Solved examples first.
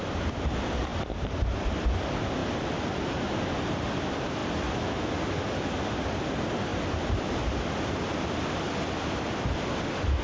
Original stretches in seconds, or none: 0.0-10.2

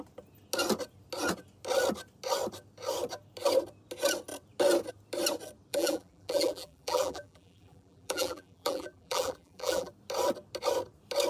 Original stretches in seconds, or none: 0.0-5.7; 9.9-11.3

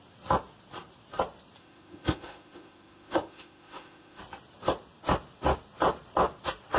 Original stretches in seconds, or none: 0.0-1.6; 4.2-6.8

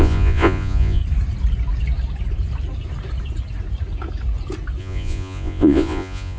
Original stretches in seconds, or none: 1.0-4.8